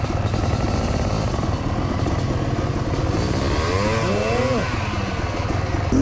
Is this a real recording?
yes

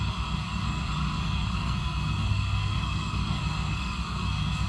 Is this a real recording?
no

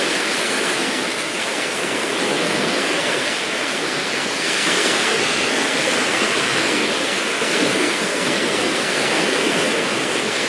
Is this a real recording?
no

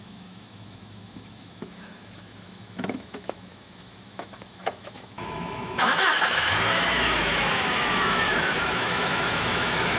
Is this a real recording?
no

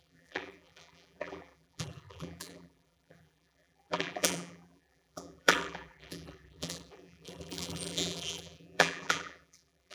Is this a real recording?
no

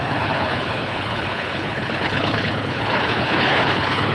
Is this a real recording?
no